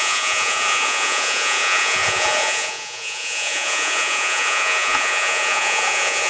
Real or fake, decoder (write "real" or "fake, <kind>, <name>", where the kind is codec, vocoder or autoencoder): fake, vocoder, Vocos